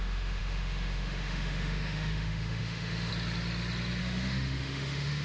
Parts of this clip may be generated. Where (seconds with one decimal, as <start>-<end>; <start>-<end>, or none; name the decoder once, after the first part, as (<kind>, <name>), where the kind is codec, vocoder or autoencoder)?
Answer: 0.0-3.1 (autoencoder, DAC-VAE); 4.0-5.2